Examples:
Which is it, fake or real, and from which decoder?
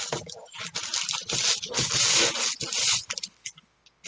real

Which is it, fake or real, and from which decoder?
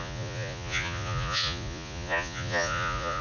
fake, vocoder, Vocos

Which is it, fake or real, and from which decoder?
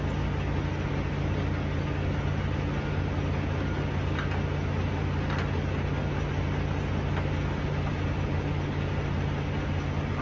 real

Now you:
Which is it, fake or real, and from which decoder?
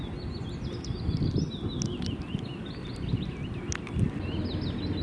real